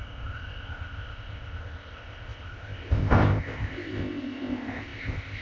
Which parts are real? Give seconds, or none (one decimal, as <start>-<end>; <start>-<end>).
none